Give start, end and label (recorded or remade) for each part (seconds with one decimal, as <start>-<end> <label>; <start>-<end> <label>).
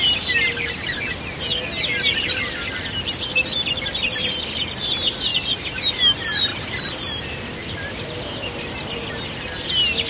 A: 0.0-5.3 recorded; 5.3-5.9 remade; 5.9-6.5 recorded; 6.5-9.2 remade; 9.2-10.1 recorded